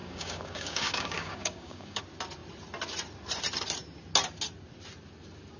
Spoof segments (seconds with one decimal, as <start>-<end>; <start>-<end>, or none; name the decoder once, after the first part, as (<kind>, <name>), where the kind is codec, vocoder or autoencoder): 0.0-2.0 (codec, DAC)